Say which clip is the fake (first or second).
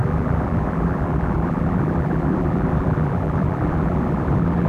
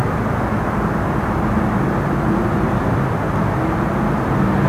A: first